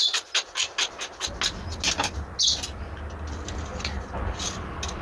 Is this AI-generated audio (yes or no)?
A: no